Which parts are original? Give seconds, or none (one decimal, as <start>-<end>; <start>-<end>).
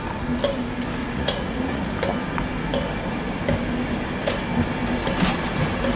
0.0-1.0; 1.9-6.0